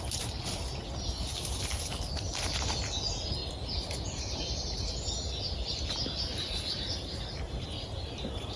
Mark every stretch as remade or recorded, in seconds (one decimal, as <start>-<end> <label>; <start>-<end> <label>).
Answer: 0.0-8.6 recorded